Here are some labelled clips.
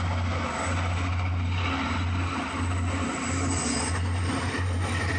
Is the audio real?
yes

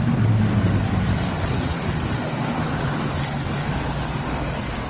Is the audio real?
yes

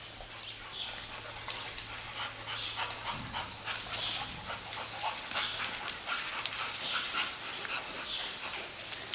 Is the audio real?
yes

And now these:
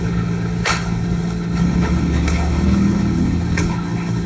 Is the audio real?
no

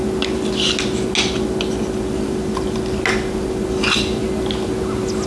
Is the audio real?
yes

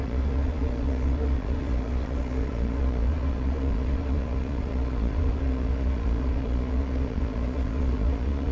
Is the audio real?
no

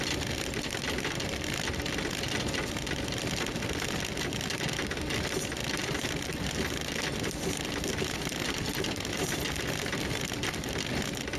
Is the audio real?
yes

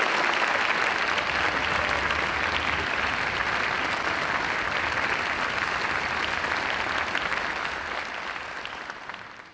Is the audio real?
yes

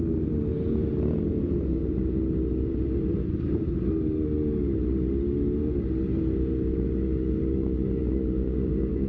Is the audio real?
yes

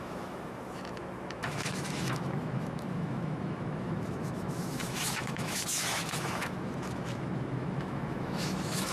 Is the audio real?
no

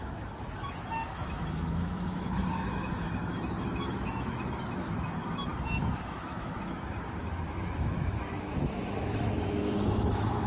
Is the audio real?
no